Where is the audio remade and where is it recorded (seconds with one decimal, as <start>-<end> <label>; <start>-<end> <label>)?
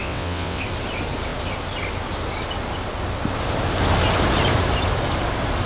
0.0-0.6 remade; 0.6-5.7 recorded